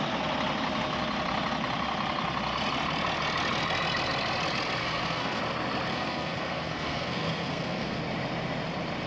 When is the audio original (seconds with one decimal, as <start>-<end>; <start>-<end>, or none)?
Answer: 0.0-4.8; 5.4-5.9; 8.0-9.1